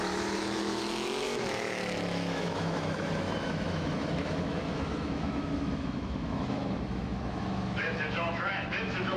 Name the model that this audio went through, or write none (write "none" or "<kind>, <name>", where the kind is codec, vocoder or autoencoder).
autoencoder, DAC-VAE